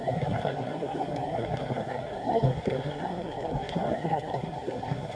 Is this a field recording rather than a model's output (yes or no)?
no